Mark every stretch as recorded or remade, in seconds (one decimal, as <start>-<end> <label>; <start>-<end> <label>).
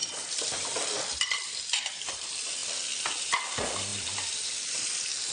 0.0-5.3 remade